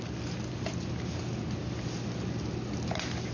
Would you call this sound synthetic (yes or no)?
no